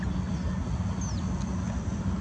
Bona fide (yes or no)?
yes